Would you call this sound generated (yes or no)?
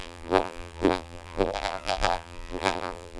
yes